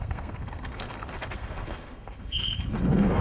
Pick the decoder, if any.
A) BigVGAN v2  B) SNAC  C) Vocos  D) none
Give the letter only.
B